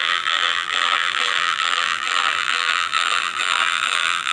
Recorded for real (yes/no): no